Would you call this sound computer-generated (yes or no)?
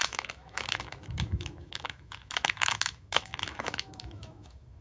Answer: yes